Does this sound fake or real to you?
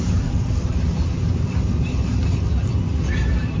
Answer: real